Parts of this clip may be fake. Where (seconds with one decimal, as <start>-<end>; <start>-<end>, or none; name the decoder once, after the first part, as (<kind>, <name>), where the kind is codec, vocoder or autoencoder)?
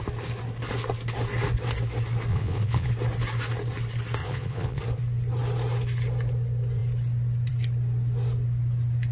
2.3-2.9 (vocoder, Vocos); 4.2-4.8